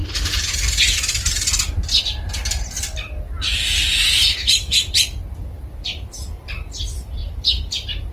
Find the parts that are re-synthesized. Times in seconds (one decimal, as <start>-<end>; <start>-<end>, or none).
4.3-4.9